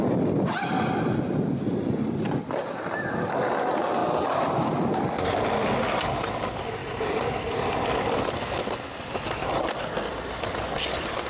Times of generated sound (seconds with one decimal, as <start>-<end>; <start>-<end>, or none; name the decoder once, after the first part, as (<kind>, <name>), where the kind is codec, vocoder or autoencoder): 4.0-5.4 (vocoder, BigVGAN v2); 6.8-10.8